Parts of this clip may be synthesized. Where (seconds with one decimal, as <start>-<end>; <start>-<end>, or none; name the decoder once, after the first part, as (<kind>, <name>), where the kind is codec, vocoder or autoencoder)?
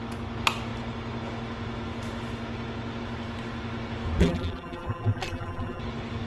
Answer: 4.2-5.8 (vocoder, BigVGAN v2)